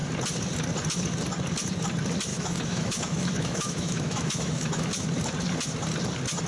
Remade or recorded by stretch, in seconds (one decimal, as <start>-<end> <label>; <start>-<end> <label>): 0.0-2.3 recorded; 2.3-4.9 remade; 4.9-6.5 recorded